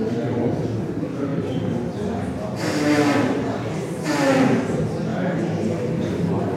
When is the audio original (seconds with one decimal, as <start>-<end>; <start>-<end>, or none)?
0.0-5.1; 6.1-6.6